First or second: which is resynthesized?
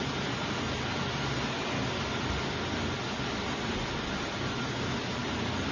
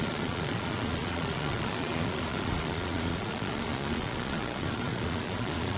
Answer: second